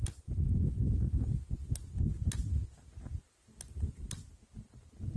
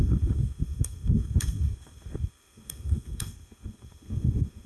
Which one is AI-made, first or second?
second